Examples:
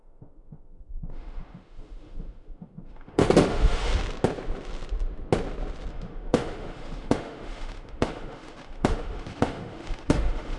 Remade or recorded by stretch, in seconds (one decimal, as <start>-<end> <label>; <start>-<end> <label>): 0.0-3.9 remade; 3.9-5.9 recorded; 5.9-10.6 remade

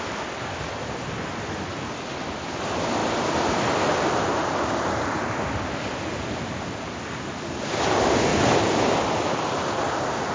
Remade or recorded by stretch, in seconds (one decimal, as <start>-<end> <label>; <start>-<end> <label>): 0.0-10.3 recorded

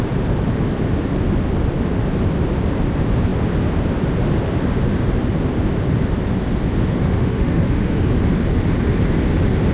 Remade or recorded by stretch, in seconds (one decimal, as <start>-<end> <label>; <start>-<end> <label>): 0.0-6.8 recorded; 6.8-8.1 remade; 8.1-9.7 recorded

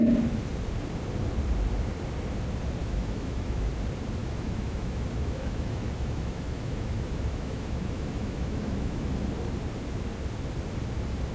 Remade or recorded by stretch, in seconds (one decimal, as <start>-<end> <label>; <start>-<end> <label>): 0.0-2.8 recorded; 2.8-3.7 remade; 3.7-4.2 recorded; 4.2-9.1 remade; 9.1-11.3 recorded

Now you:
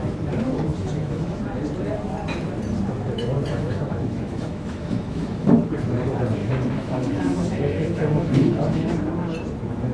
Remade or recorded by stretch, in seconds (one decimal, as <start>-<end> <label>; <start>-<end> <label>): 0.0-0.7 recorded; 0.7-1.4 remade; 1.4-3.5 recorded; 3.5-5.6 remade; 5.6-6.4 recorded; 6.4-8.9 remade; 8.9-9.9 recorded